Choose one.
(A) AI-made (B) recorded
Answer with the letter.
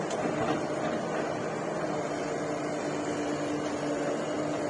B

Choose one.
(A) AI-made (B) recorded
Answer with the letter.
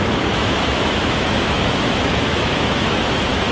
A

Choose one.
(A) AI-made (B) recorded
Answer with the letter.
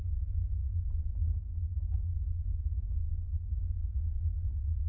A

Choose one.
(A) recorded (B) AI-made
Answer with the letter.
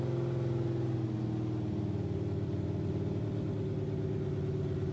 A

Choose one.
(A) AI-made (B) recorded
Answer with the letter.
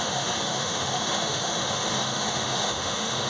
A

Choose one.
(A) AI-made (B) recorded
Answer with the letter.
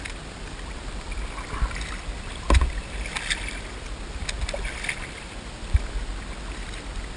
B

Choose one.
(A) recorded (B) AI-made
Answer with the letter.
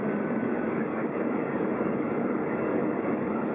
B